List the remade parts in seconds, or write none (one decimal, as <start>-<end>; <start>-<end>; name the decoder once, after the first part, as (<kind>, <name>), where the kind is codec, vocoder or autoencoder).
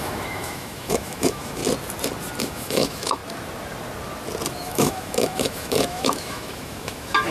0.0-1.6 (autoencoder, DAC-VAE); 2.4-3.2; 4.5-7.3